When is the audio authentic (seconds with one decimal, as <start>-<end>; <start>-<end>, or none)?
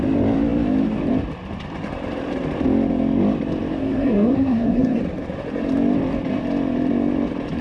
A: 0.0-3.8; 5.0-7.6